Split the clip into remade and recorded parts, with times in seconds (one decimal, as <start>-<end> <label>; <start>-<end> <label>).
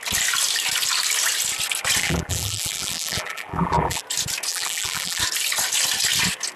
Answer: 0.0-2.0 recorded; 2.0-4.0 remade; 4.0-4.5 recorded; 4.5-5.2 remade; 5.2-6.6 recorded